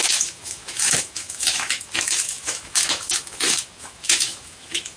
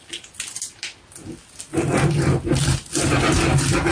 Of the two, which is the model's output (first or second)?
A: first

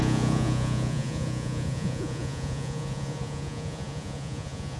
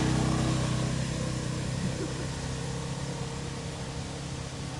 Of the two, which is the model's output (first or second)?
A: first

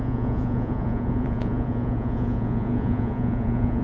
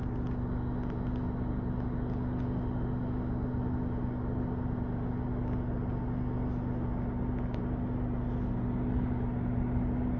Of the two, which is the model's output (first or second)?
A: first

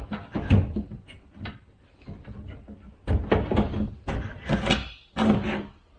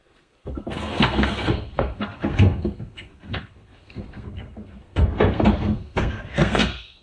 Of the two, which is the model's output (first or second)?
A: second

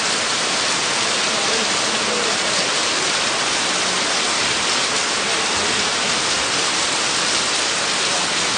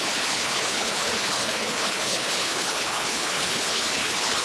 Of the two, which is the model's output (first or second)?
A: second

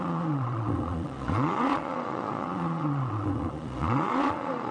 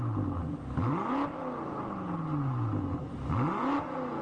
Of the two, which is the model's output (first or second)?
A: first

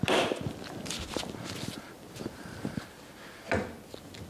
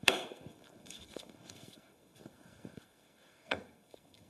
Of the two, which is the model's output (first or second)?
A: second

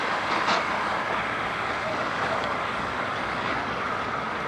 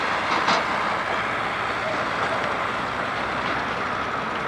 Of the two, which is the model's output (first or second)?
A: first